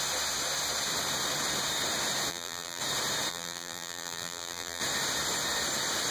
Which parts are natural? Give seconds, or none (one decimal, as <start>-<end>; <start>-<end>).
0.0-2.3; 2.8-3.3; 4.8-6.1